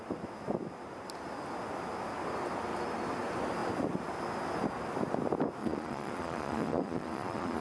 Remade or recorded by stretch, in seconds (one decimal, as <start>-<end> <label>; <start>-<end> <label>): 0.0-5.6 recorded; 5.6-7.6 remade